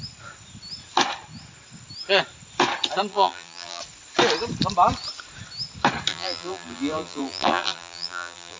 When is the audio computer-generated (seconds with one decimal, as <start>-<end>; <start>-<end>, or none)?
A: 3.1-3.8; 6.1-8.6